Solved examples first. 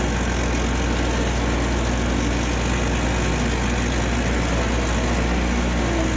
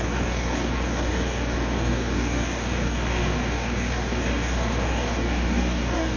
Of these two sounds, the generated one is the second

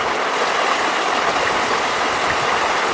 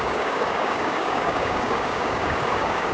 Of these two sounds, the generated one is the second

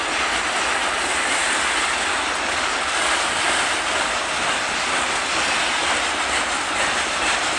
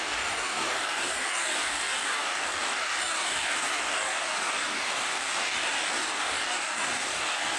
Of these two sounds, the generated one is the second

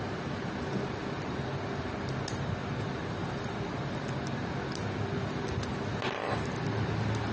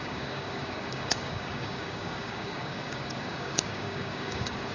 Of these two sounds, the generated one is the second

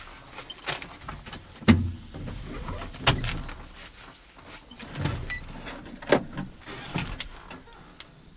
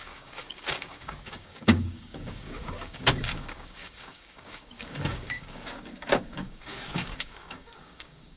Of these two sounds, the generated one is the second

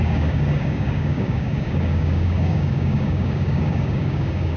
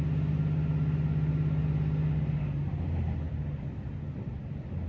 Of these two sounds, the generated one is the first